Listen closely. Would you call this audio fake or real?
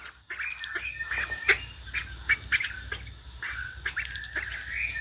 real